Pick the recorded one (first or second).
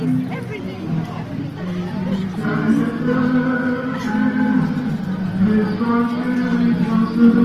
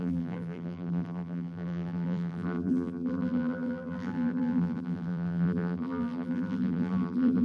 first